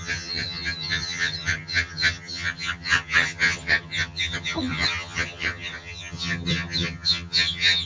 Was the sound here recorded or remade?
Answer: remade